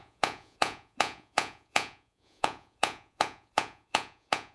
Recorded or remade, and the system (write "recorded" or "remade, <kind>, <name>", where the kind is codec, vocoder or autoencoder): remade, vocoder, Vocos